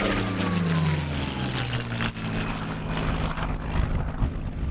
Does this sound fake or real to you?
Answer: real